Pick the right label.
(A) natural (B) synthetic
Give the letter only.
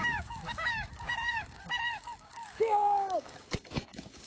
B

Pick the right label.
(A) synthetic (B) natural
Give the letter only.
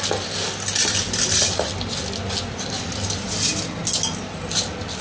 B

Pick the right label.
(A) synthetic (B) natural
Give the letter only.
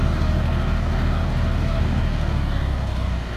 A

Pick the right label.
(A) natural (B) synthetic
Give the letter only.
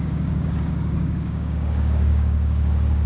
B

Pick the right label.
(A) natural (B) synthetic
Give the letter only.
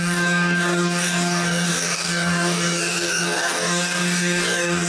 B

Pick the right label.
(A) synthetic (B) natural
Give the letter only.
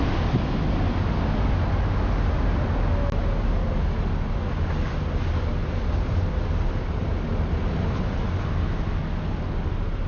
B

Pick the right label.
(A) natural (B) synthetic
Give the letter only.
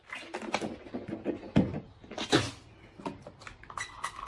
A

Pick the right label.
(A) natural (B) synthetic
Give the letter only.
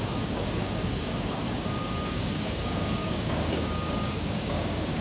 B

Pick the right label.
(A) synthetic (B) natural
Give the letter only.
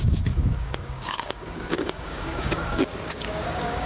A